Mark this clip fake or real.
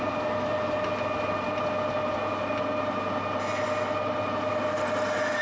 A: real